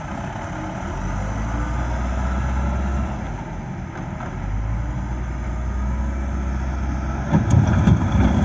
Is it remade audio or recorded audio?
recorded